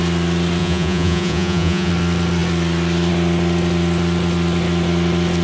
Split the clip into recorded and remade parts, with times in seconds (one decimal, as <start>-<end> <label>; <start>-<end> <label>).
0.0-0.6 recorded; 0.6-1.9 remade; 1.9-5.4 recorded